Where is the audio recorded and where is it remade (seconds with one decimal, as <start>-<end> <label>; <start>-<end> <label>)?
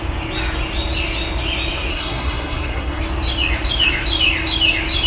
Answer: 0.0-1.9 recorded; 1.9-3.0 remade; 3.0-5.1 recorded